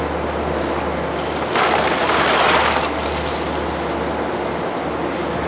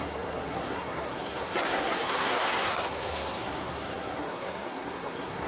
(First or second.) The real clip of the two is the first